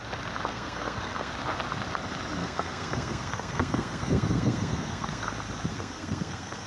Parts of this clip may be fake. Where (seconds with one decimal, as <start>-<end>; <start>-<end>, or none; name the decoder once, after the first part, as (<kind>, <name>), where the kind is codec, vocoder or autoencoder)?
0.5-1.3 (codec, SNAC); 2.4-5.3; 5.7-6.7